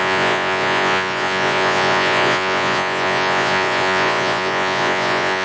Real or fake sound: fake